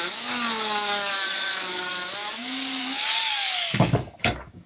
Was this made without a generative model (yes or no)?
no